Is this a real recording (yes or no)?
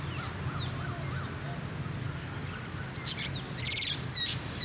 yes